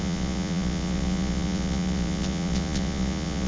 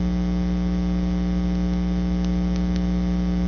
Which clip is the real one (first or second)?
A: second